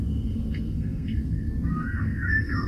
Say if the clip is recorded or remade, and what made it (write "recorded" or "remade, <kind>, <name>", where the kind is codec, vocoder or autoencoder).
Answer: remade, codec, SNAC